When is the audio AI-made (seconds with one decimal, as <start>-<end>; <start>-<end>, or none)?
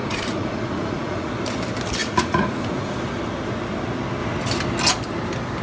0.0-1.3; 2.0-3.2